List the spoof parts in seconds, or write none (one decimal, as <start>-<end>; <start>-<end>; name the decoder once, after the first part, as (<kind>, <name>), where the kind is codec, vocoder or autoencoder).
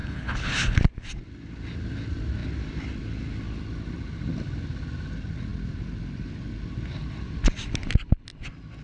0.0-0.8 (codec, HILCodec)